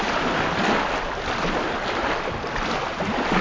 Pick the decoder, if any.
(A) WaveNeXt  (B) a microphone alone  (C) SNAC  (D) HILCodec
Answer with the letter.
B